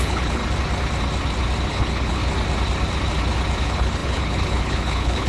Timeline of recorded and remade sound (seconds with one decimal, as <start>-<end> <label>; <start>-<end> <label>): 0.0-0.4 remade; 0.4-1.7 recorded; 1.7-2.2 remade; 2.2-3.6 recorded; 3.6-5.3 remade